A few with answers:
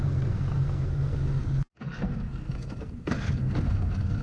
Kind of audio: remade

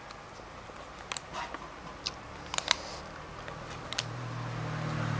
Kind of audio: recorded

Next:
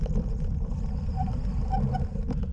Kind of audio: recorded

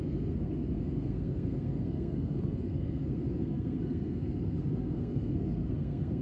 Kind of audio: remade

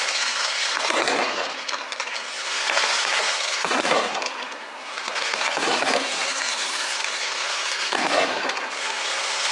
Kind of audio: remade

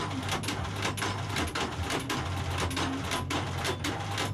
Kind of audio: recorded